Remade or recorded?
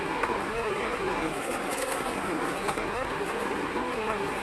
remade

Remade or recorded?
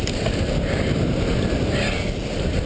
recorded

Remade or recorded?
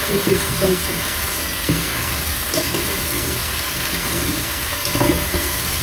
remade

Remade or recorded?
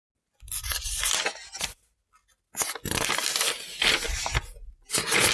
recorded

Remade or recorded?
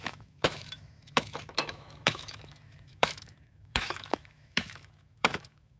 remade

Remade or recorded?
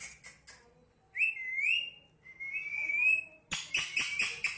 recorded